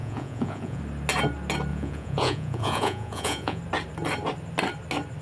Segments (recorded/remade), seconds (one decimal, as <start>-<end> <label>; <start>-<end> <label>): 0.0-0.8 remade; 0.8-1.7 recorded; 1.7-3.6 remade; 3.6-5.2 recorded